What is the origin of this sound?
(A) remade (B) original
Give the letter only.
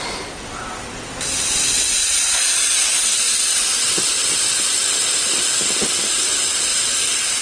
B